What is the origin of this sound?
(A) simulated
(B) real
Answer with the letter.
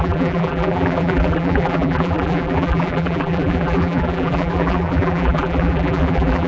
A